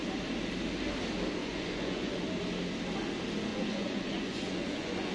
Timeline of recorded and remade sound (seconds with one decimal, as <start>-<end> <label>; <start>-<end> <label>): 0.0-1.4 recorded; 1.4-2.2 remade; 2.2-3.5 recorded; 3.5-5.1 remade